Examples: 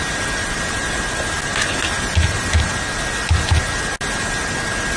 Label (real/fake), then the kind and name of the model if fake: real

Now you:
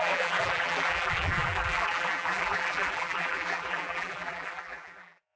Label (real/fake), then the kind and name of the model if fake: fake, vocoder, BigVGAN v2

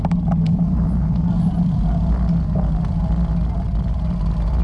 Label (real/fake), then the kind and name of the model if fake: real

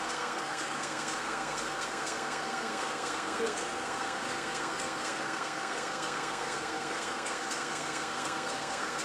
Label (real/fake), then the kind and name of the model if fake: fake, codec, SNAC